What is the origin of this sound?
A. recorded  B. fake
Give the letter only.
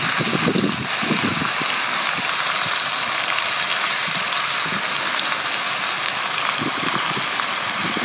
A